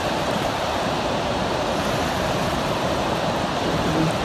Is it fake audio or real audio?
fake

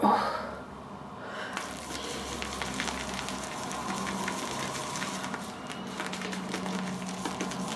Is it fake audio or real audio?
real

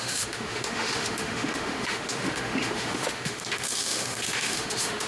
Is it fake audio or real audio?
fake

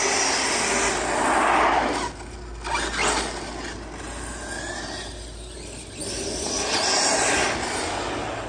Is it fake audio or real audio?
real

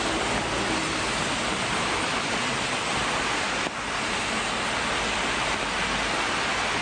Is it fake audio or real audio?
real